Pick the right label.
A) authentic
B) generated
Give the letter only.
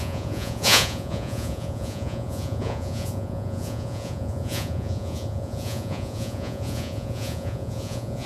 B